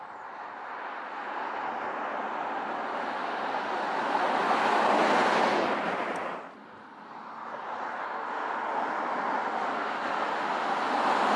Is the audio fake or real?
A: real